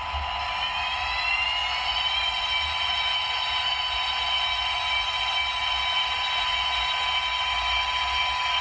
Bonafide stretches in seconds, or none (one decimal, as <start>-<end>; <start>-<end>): 0.0-8.6